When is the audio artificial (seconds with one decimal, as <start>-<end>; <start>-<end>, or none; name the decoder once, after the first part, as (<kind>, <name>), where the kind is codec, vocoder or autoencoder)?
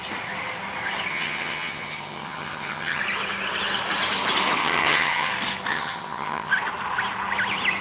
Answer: 1.1-3.0 (vocoder, HiFi-GAN); 4.6-5.3; 5.7-6.5